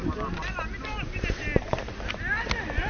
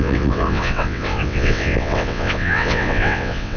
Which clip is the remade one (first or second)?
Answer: second